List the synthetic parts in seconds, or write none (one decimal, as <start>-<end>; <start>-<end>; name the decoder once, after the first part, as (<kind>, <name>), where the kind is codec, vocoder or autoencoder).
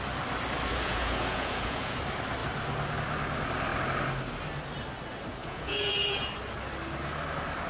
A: 0.7-2.0 (vocoder, Vocos); 5.4-6.3